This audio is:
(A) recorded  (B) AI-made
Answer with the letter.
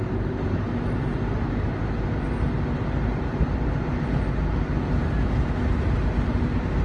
A